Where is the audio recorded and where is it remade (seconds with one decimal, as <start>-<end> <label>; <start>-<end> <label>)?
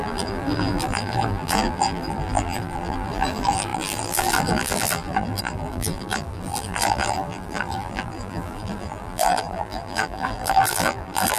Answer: 0.0-11.4 remade